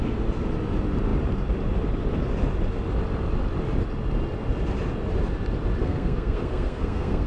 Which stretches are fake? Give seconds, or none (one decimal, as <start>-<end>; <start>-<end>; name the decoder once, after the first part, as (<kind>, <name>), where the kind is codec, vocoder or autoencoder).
5.8-7.3 (codec, SNAC)